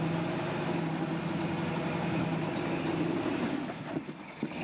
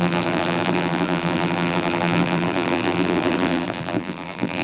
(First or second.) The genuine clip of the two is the first